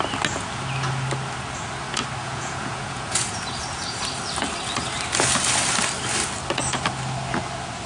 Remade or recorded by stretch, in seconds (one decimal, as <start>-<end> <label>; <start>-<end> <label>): 0.0-2.2 recorded; 2.2-4.0 remade; 4.0-7.9 recorded